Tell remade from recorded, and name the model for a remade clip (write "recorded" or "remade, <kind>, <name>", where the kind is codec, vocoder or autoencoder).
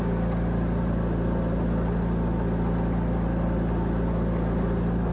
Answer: recorded